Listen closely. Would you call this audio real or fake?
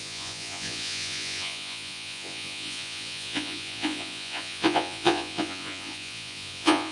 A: fake